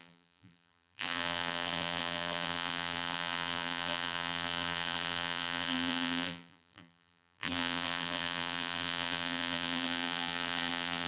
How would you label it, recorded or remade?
remade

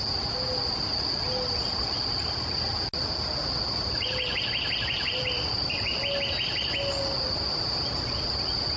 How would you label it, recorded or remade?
recorded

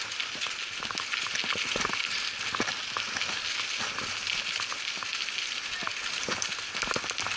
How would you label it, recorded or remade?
recorded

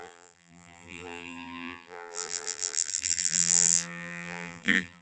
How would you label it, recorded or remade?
remade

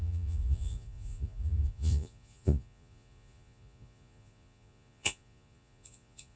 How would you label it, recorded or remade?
remade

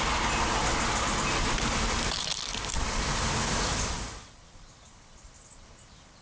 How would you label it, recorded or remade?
recorded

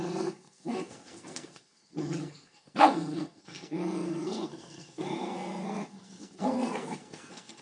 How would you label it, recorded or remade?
remade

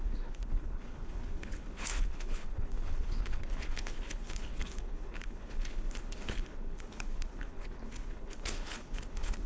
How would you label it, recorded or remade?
remade